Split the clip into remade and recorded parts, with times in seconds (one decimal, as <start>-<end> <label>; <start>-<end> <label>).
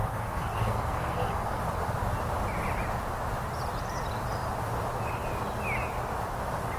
0.0-1.6 remade; 1.6-6.8 recorded